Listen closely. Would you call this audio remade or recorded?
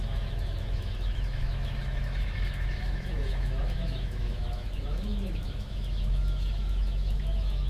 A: remade